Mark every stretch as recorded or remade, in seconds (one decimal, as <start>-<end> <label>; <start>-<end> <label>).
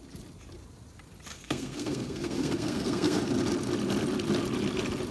0.0-1.3 recorded; 1.3-3.2 remade; 3.2-5.1 recorded